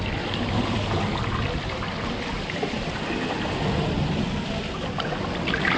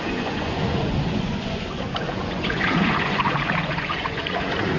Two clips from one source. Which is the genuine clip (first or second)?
first